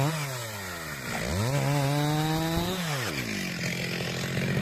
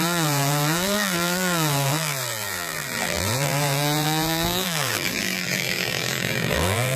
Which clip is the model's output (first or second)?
second